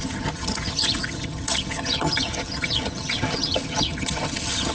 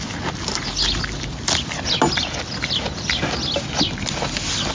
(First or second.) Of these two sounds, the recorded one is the second